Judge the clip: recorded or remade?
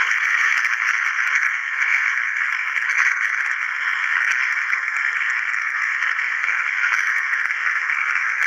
remade